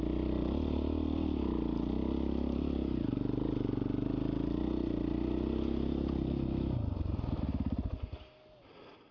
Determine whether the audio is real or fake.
real